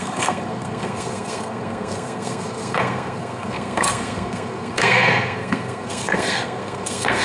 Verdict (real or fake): fake